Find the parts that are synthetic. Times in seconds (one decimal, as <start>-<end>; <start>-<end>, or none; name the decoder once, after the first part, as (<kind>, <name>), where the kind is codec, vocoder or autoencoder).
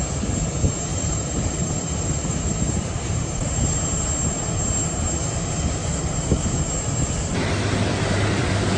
0.9-3.4 (vocoder, BigVGAN v2); 5.8-6.6